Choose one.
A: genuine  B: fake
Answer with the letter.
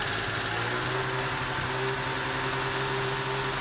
A